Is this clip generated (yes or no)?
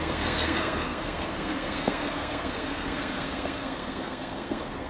yes